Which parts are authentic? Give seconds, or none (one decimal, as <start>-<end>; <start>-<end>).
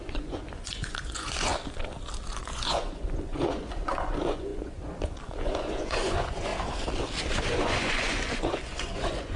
1.5-2.4; 6.5-7.3